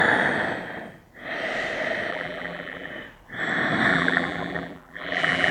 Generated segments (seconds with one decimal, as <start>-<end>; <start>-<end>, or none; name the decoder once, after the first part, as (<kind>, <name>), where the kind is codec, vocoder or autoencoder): 2.1-2.9 (vocoder, BigVGAN v2); 3.9-5.5

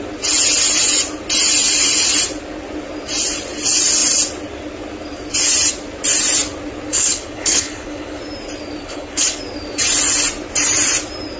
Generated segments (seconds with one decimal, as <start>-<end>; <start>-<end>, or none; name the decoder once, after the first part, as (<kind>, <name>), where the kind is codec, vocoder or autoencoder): 6.9-8.2 (codec, HILCodec); 8.8-9.4

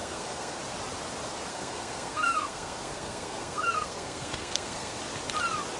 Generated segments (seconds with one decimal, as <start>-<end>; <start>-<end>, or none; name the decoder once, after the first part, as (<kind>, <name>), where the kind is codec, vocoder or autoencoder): 0.0-0.6 (codec, SNAC); 1.5-5.0

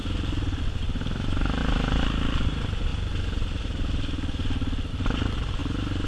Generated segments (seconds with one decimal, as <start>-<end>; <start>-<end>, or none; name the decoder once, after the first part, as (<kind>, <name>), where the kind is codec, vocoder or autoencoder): 0.0-6.1 (vocoder, BigVGAN v2)

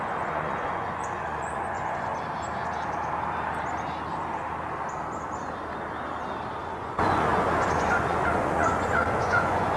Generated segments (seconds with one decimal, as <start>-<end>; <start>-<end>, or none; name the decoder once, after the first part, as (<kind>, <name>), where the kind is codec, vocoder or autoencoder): 0.0-2.1 (vocoder, Vocos); 6.6-9.8

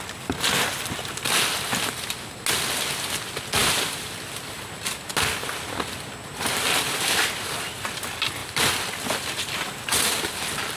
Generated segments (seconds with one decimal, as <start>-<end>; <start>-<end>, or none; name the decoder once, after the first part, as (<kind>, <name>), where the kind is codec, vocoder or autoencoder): none

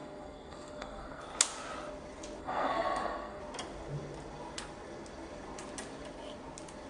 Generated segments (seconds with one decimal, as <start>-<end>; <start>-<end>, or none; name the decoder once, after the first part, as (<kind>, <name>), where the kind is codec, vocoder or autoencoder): 0.0-1.2 (codec, SNAC); 2.4-3.4